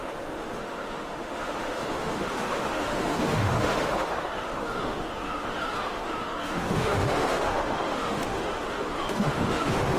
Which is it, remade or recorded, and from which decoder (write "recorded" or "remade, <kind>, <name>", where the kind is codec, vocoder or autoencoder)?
remade, autoencoder, DAC-VAE